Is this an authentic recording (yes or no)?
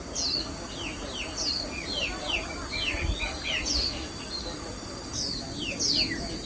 yes